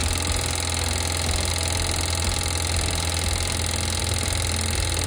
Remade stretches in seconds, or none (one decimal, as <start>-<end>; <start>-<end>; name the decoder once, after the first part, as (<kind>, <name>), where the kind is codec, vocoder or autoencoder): none